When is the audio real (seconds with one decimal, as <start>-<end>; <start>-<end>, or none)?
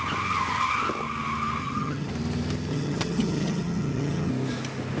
0.0-1.6; 2.1-2.7; 4.3-5.0